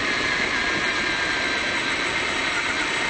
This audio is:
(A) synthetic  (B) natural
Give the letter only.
B